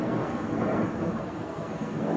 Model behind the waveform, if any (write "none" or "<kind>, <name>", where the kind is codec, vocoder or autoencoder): codec, SNAC